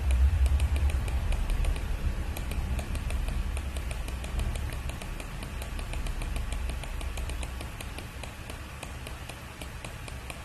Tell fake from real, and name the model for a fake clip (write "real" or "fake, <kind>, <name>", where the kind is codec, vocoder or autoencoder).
fake, vocoder, BigVGAN v2